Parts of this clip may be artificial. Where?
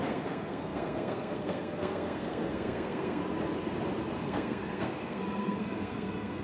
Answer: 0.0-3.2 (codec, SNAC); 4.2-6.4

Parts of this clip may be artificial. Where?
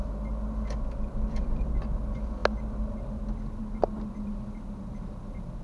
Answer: none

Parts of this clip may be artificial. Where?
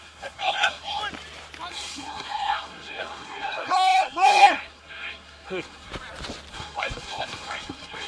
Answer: 0.0-1.0 (codec, SNAC); 1.7-5.9; 6.5-8.1